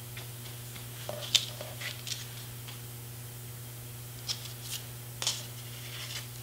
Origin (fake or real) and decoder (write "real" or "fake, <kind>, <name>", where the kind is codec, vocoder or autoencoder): real